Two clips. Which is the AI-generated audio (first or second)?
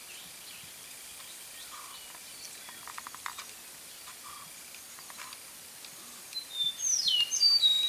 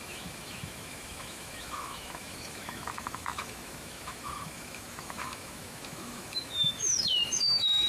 second